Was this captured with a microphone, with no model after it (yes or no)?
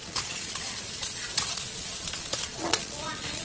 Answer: no